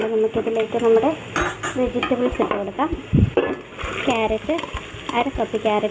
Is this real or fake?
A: real